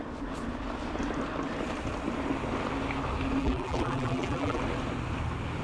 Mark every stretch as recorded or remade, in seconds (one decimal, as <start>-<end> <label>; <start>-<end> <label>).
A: 0.0-3.4 recorded; 3.4-4.6 remade; 4.6-5.6 recorded

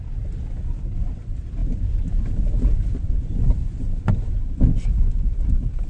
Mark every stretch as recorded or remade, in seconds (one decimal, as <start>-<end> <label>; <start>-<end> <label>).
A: 0.0-5.9 recorded

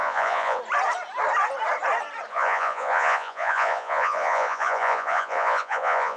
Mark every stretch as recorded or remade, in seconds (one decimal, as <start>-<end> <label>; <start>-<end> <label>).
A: 0.0-0.6 remade; 0.6-2.3 recorded; 2.3-6.2 remade

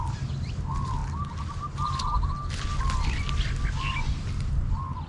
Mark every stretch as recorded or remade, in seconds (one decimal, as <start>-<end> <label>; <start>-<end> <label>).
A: 0.0-5.1 recorded

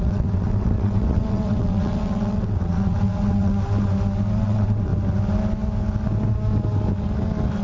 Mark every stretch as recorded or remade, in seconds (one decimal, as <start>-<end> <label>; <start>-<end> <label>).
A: 0.0-3.5 remade; 3.5-4.4 recorded; 4.4-4.9 remade; 4.9-7.6 recorded

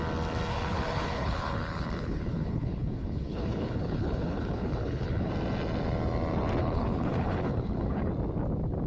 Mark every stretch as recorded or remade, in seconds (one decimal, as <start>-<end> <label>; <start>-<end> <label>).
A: 0.0-0.5 recorded; 0.5-5.3 remade; 5.3-6.6 recorded; 6.6-8.1 remade; 8.1-8.9 recorded

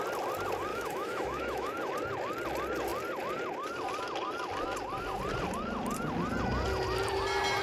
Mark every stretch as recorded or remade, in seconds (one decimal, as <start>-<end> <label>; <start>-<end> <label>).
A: 0.0-0.7 recorded; 0.7-1.9 remade; 1.9-7.6 recorded

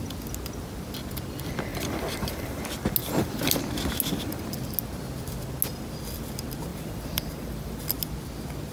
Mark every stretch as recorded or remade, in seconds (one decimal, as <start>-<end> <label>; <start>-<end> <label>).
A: 0.0-1.7 recorded; 1.7-2.6 remade; 2.6-3.0 recorded; 3.0-3.6 remade; 3.6-6.7 recorded; 6.7-7.7 remade; 7.7-8.7 recorded